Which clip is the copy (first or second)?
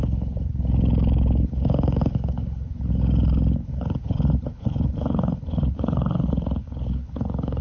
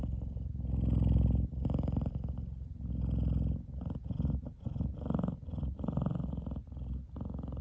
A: first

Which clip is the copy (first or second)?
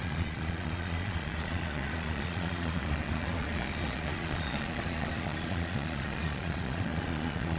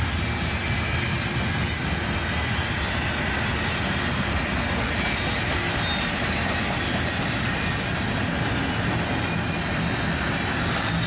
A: first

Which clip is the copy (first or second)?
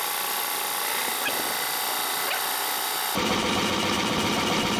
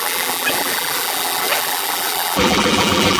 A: second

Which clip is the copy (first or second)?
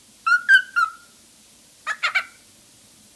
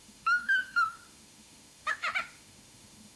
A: second